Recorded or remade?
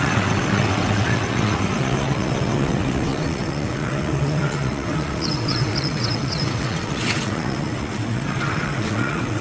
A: remade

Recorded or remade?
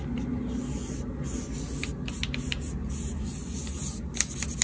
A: recorded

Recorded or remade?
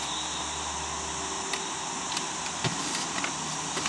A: recorded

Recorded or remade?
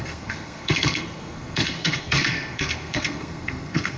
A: remade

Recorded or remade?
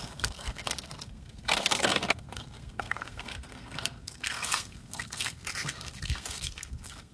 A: remade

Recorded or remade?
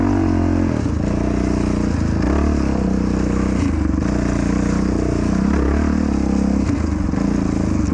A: recorded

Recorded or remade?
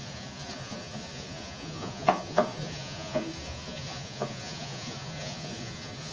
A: remade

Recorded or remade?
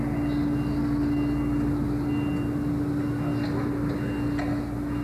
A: recorded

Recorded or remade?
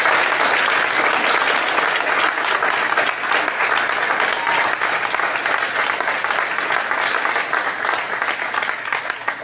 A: recorded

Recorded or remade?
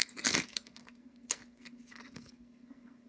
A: remade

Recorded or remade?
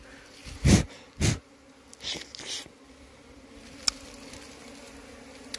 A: recorded